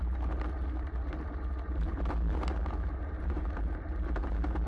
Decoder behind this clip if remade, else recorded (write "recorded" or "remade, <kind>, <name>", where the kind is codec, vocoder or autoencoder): recorded